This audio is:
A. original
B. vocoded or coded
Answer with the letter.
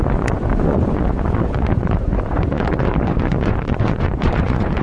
B